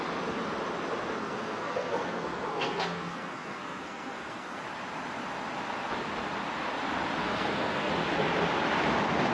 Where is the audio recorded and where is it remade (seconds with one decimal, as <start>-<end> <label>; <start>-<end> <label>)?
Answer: 0.0-1.2 recorded; 1.2-4.6 remade; 4.6-7.2 recorded; 7.2-7.9 remade; 7.9-9.3 recorded